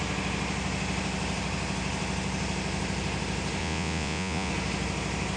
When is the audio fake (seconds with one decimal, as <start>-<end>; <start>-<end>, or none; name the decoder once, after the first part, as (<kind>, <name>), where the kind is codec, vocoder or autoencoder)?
3.6-4.5 (vocoder, Vocos)